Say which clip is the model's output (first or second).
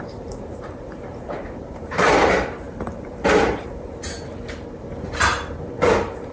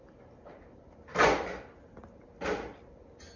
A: first